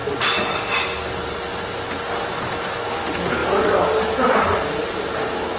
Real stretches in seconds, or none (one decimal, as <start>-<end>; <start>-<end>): 0.0-3.4; 5.1-5.6